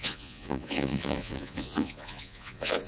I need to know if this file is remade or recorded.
remade